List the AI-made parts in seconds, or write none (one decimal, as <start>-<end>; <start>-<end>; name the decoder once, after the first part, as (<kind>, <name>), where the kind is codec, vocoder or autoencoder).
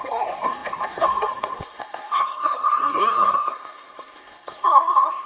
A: 0.0-5.3 (codec, SNAC)